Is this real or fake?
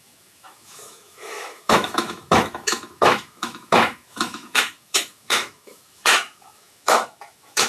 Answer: fake